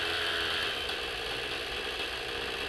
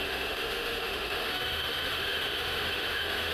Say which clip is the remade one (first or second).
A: second